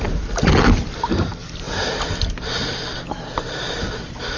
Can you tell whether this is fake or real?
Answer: real